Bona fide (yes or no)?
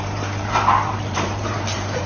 no